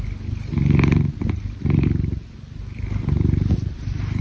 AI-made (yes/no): no